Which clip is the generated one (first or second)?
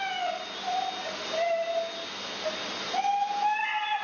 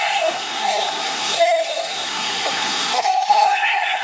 second